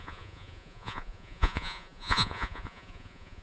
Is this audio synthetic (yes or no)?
yes